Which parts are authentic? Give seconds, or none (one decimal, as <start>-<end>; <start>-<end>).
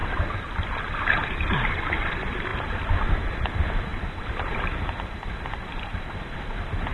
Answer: 0.0-6.9